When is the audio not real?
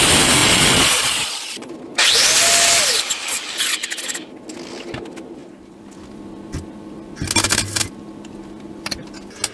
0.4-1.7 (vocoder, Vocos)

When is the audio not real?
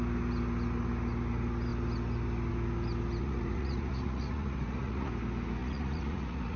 3.2-5.1 (vocoder, Vocos); 5.6-6.6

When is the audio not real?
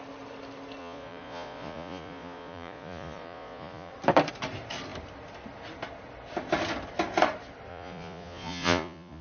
0.8-3.9 (vocoder, Vocos); 7.7-9.2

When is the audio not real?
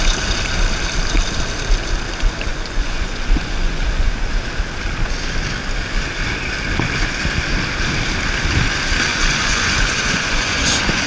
2.5-4.3 (vocoder, Vocos); 9.1-11.1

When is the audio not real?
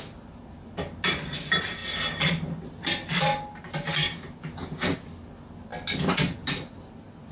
none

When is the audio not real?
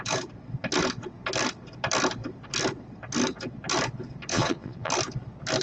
4.3-4.9 (vocoder, Vocos)